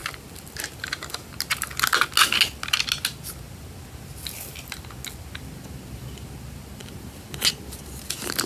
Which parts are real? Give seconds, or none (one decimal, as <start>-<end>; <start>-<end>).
0.0-8.5